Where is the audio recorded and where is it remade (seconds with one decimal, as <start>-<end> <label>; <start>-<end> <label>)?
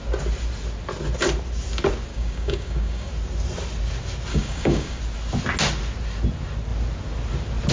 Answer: 0.0-2.1 recorded; 2.1-3.1 remade; 3.1-4.3 recorded; 4.3-5.0 remade; 5.0-7.7 recorded